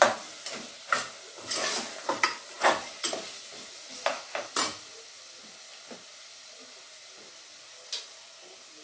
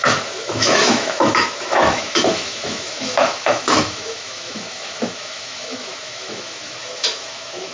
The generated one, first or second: second